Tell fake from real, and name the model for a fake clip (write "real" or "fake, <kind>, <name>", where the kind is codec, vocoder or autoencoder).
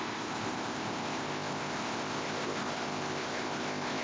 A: fake, codec, ZipCodec